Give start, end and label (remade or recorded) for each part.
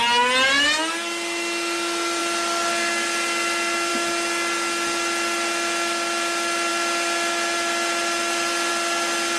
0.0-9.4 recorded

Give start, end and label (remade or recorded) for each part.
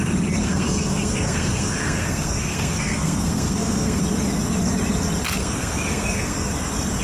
0.0-0.4 recorded; 0.4-4.0 remade; 4.0-5.4 recorded; 5.4-6.5 remade; 6.5-7.0 recorded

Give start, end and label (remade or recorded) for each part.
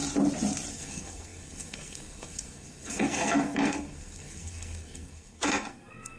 0.0-0.7 recorded; 0.7-6.2 remade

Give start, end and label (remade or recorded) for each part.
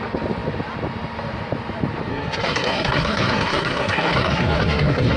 0.0-2.1 recorded; 2.1-5.2 remade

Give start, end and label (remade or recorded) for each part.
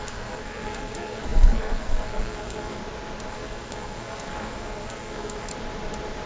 0.0-2.8 remade; 2.8-3.3 recorded; 3.3-5.5 remade; 5.5-6.3 recorded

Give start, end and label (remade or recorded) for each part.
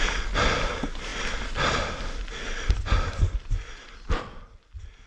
0.0-5.1 recorded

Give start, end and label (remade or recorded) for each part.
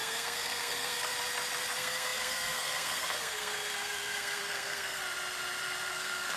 0.0-1.1 remade; 1.1-1.7 recorded; 1.7-5.0 remade; 5.0-5.9 recorded; 5.9-6.4 remade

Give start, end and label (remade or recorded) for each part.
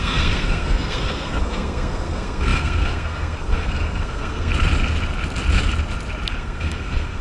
0.0-4.5 remade; 4.5-6.3 recorded; 6.3-7.2 remade